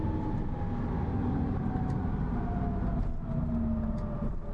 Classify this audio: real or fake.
real